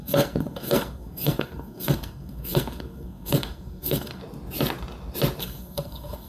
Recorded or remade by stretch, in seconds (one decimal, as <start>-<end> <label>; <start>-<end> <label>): 0.0-4.2 remade; 4.2-5.4 recorded; 5.4-6.3 remade